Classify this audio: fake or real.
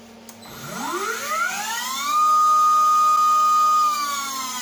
real